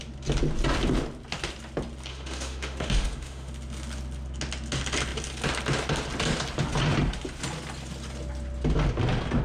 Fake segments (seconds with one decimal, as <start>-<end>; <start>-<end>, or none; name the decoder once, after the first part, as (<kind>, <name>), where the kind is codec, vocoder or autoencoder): 2.1-3.5 (autoencoder, DAC-VAE)